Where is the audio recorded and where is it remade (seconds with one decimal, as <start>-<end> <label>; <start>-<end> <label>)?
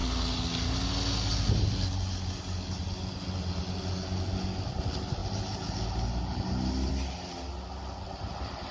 0.0-8.7 recorded